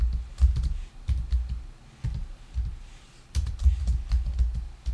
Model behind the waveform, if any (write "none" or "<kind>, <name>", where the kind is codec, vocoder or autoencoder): none